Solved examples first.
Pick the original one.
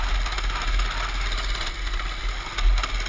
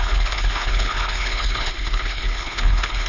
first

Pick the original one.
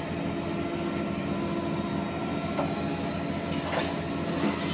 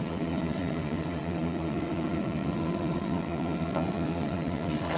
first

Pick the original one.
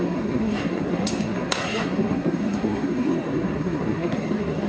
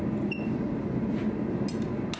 second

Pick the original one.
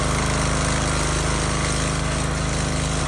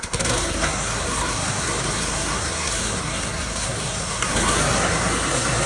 first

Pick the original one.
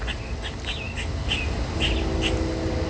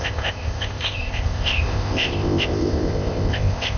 first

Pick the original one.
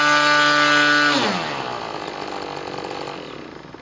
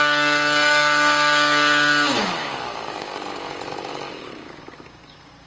first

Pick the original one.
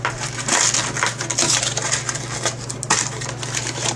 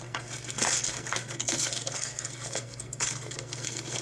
first